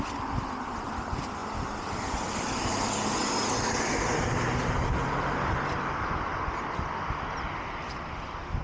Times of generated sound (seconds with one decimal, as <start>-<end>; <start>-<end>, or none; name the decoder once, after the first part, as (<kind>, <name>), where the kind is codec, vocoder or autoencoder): none